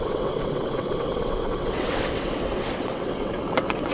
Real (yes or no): no